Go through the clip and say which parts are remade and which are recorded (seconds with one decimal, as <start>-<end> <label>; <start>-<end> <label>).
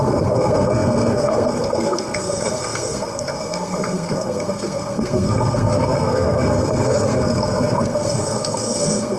0.0-9.2 remade